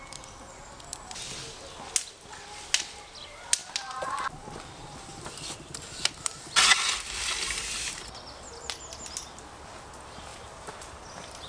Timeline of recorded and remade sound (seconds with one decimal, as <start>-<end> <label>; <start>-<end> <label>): 0.0-10.3 recorded; 10.3-11.5 remade